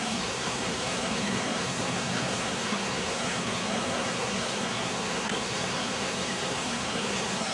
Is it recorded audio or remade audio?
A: remade